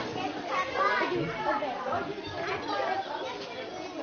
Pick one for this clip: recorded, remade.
recorded